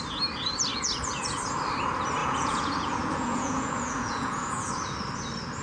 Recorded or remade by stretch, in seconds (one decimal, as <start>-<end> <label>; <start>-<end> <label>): 0.0-0.7 recorded; 0.7-1.4 remade; 1.4-2.2 recorded; 2.2-4.7 remade; 4.7-5.6 recorded